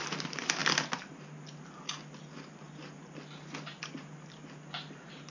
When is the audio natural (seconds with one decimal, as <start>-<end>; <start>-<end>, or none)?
0.0-5.3